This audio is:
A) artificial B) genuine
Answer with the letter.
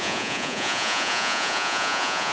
A